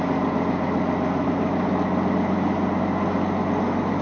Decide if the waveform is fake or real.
real